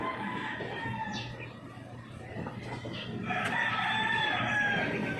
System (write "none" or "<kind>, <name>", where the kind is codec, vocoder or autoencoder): none